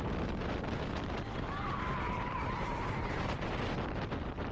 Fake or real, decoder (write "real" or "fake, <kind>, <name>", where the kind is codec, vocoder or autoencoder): real